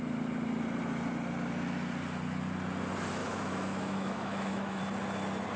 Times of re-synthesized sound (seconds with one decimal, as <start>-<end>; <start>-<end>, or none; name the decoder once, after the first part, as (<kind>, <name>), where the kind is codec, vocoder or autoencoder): 3.2-4.8 (autoencoder, DAC-VAE)